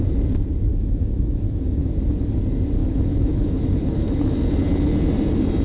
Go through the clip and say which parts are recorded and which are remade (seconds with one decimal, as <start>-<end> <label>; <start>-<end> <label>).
0.0-0.7 recorded; 0.7-1.9 remade; 1.9-2.8 recorded; 2.8-4.4 remade; 4.4-5.6 recorded